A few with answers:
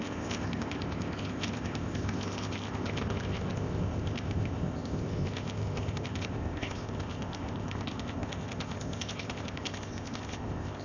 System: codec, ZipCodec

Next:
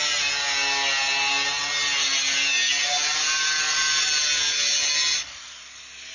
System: none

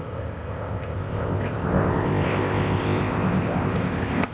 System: codec, ZipCodec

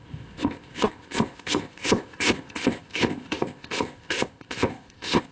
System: codec, ZipCodec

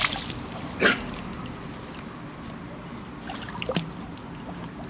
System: none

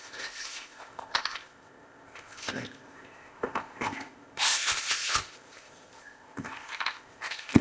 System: codec, ZipCodec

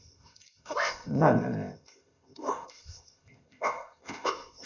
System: codec, ZipCodec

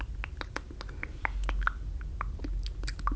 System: none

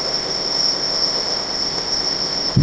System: codec, ZipCodec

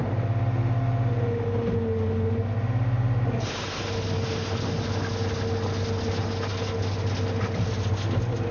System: none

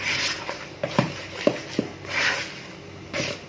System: none